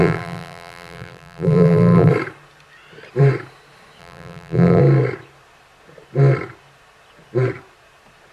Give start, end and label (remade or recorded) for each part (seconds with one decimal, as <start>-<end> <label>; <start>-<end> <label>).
0.0-2.1 remade; 2.1-4.0 recorded; 4.0-4.8 remade; 4.8-8.3 recorded